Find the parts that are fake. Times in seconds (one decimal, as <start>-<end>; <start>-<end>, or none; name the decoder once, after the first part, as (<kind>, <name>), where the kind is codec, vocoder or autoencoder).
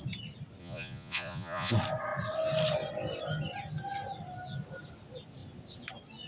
0.6-1.7 (vocoder, Vocos)